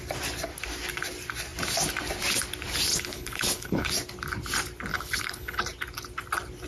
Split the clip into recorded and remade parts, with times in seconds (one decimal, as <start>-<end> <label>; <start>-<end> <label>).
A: 0.0-2.9 recorded; 2.9-3.9 remade; 3.9-4.9 recorded; 4.9-5.6 remade; 5.6-6.7 recorded